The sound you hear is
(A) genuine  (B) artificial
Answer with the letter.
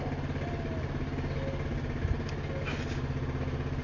A